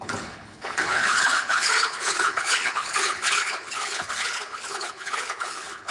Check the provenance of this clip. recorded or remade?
remade